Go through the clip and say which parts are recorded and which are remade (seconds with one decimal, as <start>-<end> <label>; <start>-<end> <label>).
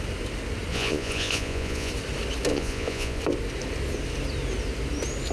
0.0-0.7 recorded; 0.7-1.9 remade; 1.9-2.5 recorded; 2.5-3.2 remade; 3.2-5.3 recorded